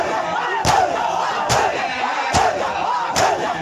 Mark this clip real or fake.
real